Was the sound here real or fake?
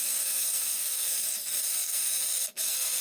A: fake